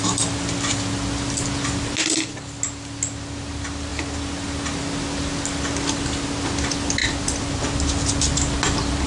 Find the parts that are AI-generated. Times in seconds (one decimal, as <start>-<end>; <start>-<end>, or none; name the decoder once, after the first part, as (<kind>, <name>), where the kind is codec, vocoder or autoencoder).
none